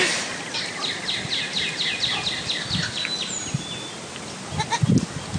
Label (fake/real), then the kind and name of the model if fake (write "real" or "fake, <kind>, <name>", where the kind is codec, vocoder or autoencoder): real